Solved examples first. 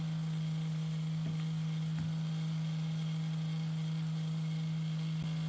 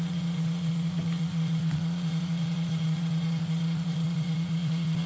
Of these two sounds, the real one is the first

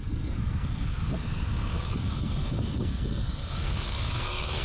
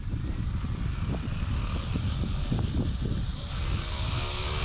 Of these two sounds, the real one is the second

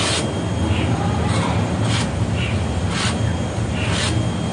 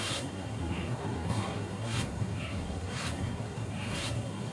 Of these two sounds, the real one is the first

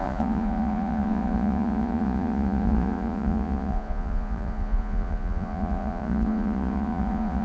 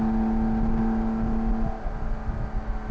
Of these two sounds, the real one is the second